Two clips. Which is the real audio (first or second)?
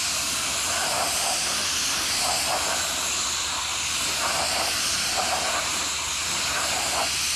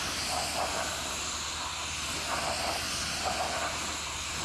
second